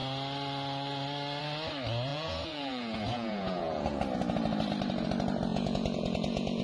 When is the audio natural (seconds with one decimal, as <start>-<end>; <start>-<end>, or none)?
0.0-2.1; 4.0-5.5